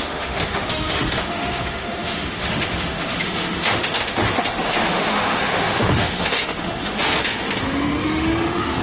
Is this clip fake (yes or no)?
yes